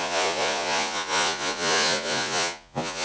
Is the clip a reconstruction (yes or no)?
yes